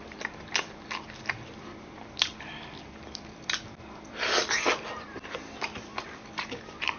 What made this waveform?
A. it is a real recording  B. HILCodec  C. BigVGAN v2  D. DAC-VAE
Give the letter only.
C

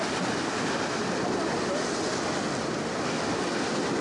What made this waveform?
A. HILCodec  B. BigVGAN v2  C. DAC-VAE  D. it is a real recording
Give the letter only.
D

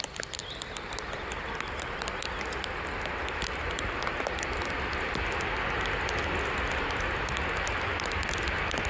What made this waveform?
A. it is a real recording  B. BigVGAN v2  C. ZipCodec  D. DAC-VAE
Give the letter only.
A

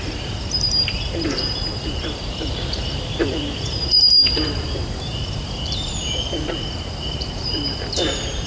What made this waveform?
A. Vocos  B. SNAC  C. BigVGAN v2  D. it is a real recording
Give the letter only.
C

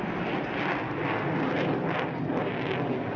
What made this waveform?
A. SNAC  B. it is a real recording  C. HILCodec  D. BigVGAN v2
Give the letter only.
B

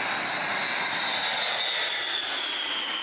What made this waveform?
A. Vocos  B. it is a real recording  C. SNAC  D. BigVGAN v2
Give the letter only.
B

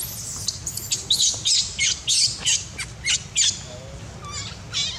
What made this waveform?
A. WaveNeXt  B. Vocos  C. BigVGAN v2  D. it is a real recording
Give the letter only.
D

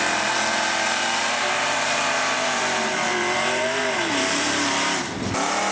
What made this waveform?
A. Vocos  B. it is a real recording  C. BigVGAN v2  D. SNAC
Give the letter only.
C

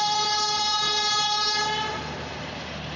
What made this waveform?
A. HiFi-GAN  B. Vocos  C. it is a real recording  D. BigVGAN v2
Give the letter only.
D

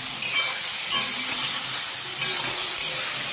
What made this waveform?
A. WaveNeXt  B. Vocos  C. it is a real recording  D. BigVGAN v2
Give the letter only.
C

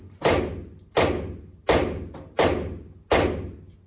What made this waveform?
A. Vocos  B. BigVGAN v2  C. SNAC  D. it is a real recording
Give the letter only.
D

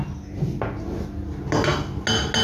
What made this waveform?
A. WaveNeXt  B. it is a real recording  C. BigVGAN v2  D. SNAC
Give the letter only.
B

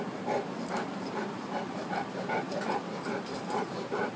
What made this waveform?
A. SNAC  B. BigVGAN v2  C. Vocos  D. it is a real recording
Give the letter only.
B